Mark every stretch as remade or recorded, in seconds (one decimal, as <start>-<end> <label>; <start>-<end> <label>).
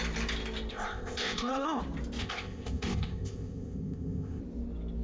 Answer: 0.0-0.7 recorded; 0.7-1.8 remade; 1.8-2.2 recorded; 2.2-4.4 remade; 4.4-5.0 recorded